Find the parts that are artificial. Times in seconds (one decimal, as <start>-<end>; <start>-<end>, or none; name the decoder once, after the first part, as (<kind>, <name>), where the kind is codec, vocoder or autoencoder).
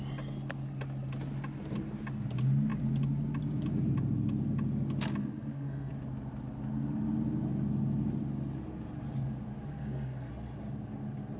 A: 5.2-5.9 (codec, SNAC); 9.7-10.3